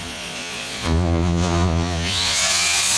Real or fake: fake